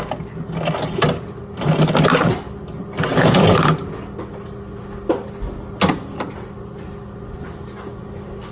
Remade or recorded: recorded